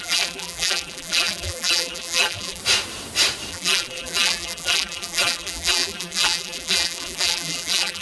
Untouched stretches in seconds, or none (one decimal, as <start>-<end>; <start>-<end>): 2.6-3.5

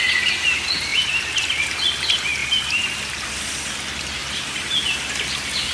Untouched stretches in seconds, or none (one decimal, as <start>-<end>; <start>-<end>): 0.0-0.9; 1.8-4.2; 4.8-5.7